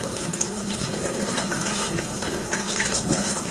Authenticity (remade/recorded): remade